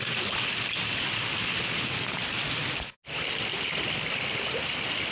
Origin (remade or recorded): recorded